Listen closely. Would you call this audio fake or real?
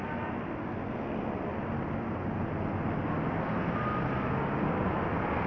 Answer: real